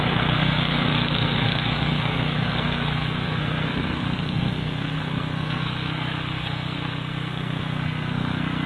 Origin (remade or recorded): remade